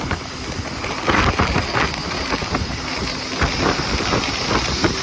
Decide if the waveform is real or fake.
real